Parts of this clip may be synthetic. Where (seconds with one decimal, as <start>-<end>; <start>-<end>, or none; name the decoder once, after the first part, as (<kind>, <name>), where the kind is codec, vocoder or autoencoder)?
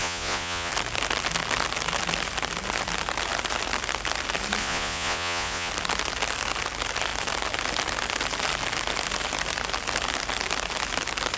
0.0-0.7 (vocoder, Vocos); 4.6-5.7